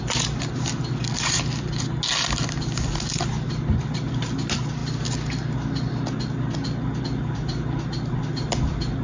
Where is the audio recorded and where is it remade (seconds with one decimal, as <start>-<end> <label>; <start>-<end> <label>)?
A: 0.0-9.0 recorded